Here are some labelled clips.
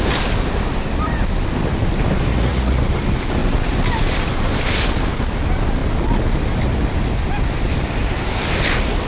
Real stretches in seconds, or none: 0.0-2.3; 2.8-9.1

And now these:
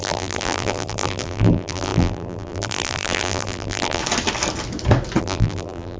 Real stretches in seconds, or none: 4.0-5.2

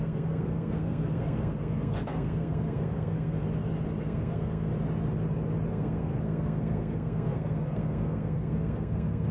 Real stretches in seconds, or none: 3.4-4.0; 4.7-5.7

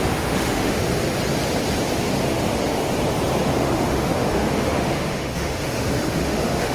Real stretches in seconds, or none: 0.9-2.2; 2.8-3.6

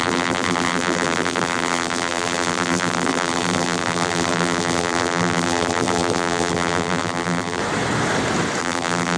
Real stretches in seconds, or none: 7.6-8.6

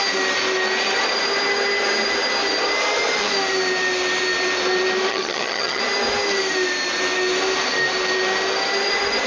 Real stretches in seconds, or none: 0.0-5.1; 5.8-9.3

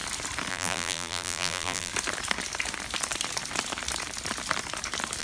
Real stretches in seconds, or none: 0.0-0.5; 1.9-5.2